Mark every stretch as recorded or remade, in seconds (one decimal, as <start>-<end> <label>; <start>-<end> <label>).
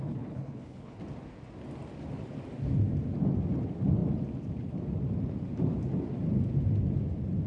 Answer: 0.0-1.0 remade; 1.0-7.5 recorded